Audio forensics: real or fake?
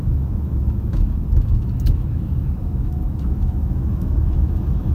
fake